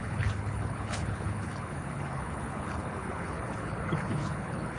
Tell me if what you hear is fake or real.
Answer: fake